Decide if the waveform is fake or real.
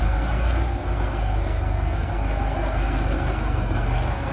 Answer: fake